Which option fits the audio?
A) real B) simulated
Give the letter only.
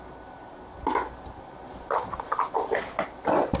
A